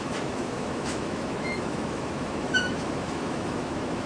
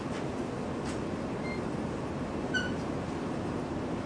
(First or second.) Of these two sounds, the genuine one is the second